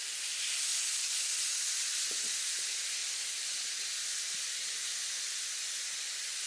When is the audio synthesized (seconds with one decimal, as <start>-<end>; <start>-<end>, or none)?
none